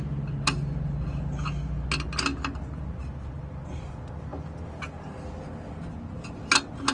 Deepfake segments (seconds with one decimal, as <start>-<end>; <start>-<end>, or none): none